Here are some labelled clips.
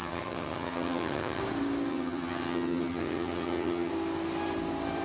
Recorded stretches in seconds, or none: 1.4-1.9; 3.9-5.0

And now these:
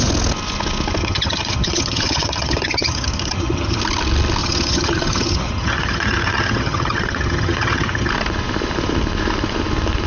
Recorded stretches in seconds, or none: 0.0-1.0; 3.8-4.4; 8.1-10.1

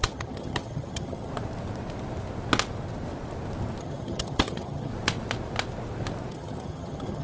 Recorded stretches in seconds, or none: 1.3-3.8; 4.9-6.3

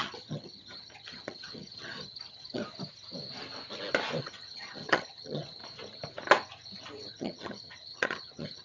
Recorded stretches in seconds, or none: 2.6-4.2; 5.6-7.1

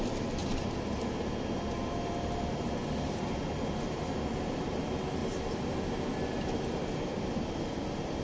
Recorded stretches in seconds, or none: 0.0-8.2

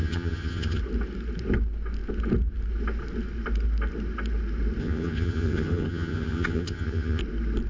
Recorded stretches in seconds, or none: 0.8-4.8; 7.2-7.7

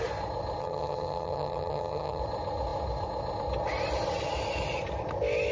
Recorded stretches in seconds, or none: 0.0-0.6; 2.2-5.5